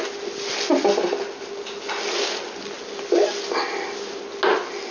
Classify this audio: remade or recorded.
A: recorded